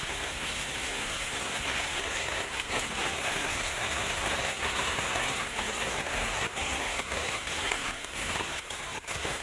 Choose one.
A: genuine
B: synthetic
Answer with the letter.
B